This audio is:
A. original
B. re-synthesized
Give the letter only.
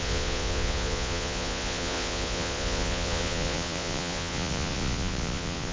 B